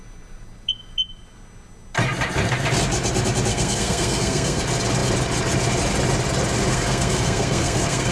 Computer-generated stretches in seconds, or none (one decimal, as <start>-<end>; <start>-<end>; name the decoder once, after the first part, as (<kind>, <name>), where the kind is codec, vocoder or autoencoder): 3.5-4.6 (codec, SNAC); 6.7-8.1